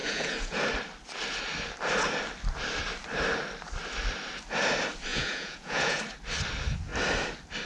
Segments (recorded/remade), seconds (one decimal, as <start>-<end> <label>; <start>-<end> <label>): 0.0-0.6 remade; 0.6-5.1 recorded; 5.1-6.0 remade; 6.0-7.7 recorded